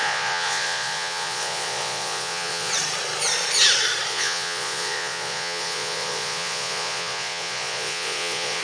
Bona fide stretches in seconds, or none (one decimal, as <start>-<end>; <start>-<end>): 2.7-4.1